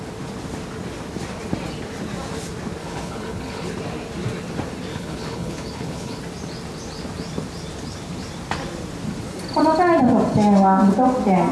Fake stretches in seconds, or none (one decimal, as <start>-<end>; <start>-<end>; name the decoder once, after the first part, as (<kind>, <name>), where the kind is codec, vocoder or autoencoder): 2.8-3.7 (codec, HILCodec); 4.9-6.2